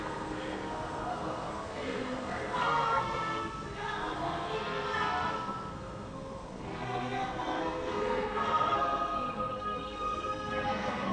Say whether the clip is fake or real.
fake